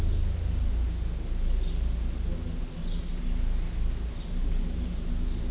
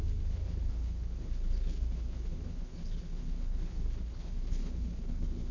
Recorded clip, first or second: first